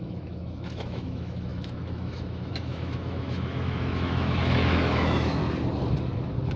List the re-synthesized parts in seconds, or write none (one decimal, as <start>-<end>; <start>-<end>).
0.0-5.4